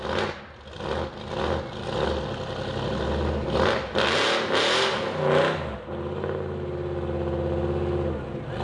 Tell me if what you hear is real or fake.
real